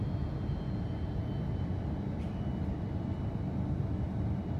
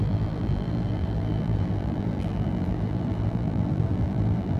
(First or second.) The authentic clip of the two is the first